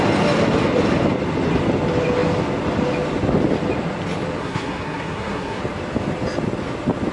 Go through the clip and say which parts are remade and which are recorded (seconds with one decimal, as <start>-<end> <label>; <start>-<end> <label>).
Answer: 0.0-4.4 recorded; 4.4-5.6 remade; 5.6-7.1 recorded